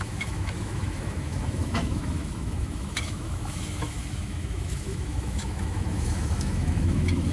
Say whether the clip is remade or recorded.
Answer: remade